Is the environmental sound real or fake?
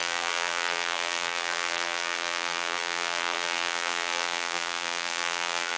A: fake